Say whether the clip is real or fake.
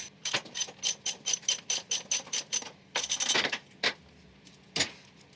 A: real